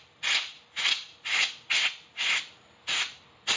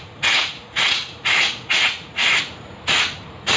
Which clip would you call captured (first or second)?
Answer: first